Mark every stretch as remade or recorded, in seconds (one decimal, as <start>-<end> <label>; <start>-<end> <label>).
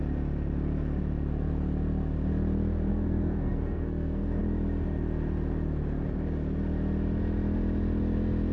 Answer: 0.0-2.9 recorded; 2.9-4.4 remade; 4.4-8.5 recorded